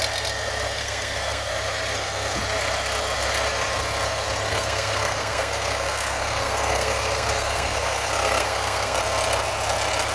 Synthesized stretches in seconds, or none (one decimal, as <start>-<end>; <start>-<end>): 0.8-1.5; 4.5-9.0

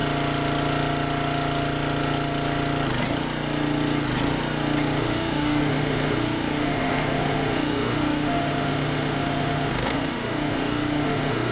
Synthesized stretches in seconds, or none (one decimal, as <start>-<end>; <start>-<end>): 5.0-11.5

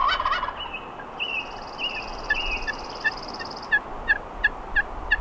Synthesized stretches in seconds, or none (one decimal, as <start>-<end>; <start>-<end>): none

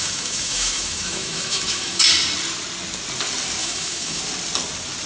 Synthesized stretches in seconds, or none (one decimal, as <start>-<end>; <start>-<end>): 0.0-2.0; 3.6-4.2

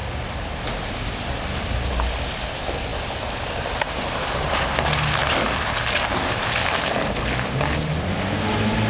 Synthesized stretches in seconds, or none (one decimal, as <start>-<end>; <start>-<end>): 0.0-1.9; 2.9-5.8

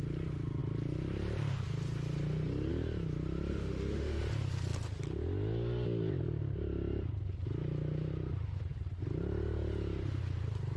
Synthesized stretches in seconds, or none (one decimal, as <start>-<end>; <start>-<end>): 3.5-4.2

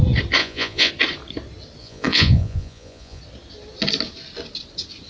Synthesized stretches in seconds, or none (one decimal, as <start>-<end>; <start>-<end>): 0.4-0.9; 1.8-3.2